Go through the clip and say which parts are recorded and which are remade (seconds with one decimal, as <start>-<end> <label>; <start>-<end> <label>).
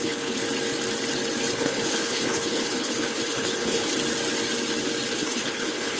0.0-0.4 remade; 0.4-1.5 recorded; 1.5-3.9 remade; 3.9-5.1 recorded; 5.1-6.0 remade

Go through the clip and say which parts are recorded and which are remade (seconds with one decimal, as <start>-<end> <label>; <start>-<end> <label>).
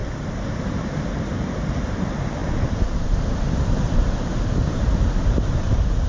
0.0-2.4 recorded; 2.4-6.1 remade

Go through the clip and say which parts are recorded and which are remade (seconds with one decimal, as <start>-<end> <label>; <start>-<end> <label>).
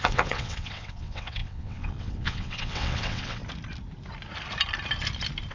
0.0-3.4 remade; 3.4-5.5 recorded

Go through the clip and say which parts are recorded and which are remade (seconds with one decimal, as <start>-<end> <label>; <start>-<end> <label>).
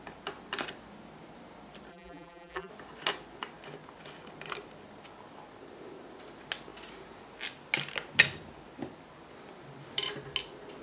0.0-1.9 recorded; 1.9-2.7 remade; 2.7-10.8 recorded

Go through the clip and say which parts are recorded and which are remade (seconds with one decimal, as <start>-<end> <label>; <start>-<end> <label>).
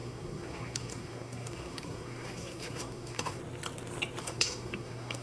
0.0-3.4 remade; 3.4-4.2 recorded; 4.2-5.2 remade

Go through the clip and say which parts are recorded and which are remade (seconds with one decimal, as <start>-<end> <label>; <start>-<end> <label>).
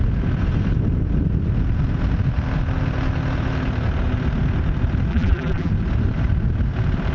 0.0-5.1 recorded; 5.1-5.7 remade; 5.7-7.1 recorded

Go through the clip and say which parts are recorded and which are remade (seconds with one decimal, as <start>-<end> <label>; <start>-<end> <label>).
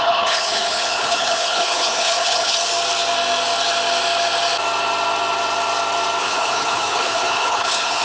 0.0-2.7 remade; 2.7-6.2 recorded; 6.2-8.0 remade